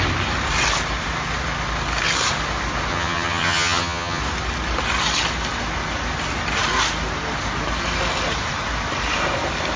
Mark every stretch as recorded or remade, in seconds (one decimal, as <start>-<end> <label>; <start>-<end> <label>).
0.0-2.9 recorded; 2.9-4.2 remade; 4.2-9.8 recorded